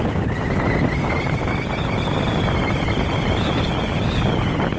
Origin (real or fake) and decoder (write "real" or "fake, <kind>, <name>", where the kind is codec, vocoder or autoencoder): real